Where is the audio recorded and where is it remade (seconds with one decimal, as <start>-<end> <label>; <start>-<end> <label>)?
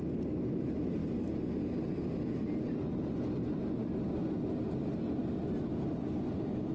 0.0-6.7 recorded